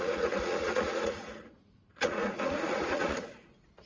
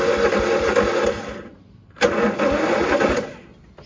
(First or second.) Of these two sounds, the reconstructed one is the first